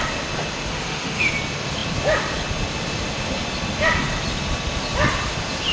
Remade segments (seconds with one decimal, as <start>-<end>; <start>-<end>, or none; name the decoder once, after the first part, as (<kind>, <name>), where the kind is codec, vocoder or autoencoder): 0.7-1.3 (autoencoder, DAC-VAE)